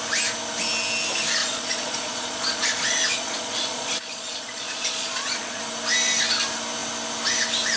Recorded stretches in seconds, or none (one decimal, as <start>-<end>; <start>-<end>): 0.0-1.4; 5.6-7.8